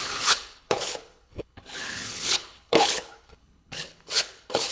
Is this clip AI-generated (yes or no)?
yes